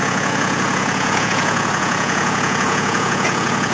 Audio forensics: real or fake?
fake